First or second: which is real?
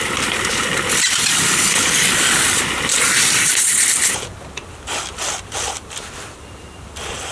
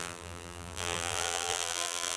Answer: first